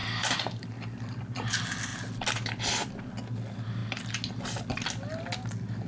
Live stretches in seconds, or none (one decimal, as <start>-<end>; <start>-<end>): 0.0-5.9